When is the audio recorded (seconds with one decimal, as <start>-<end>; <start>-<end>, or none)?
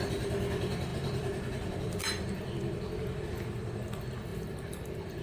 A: none